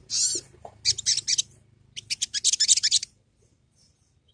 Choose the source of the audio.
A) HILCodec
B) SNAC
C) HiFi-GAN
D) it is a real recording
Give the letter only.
D